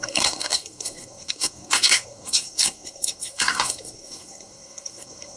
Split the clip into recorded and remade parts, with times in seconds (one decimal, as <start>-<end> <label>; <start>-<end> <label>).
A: 0.0-5.4 remade